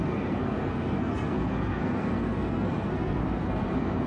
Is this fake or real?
fake